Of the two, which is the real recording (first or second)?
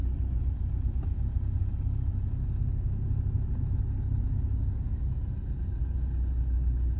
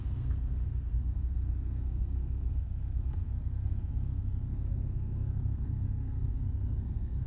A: first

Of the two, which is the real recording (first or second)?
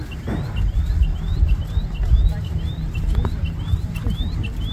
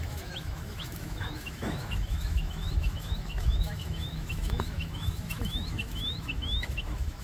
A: first